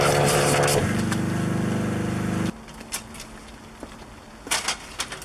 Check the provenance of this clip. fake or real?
real